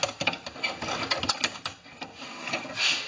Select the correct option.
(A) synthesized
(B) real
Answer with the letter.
B